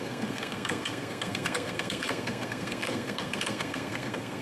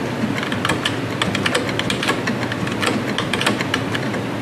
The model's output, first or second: first